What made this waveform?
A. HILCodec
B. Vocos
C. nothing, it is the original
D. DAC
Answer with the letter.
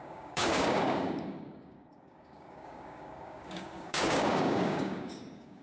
D